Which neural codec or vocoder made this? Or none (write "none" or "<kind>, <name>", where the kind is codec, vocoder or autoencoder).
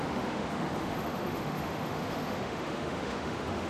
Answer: autoencoder, DAC-VAE